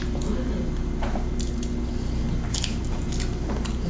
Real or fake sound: real